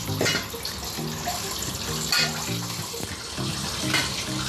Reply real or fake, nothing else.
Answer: real